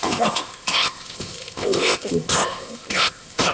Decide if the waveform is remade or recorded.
remade